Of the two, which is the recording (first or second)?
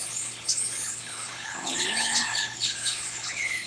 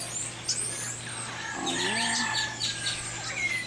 second